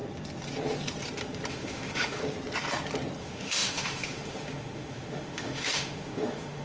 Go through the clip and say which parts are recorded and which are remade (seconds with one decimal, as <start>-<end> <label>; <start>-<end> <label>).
0.0-1.5 recorded; 1.5-2.2 remade; 2.2-3.2 recorded; 3.2-6.6 remade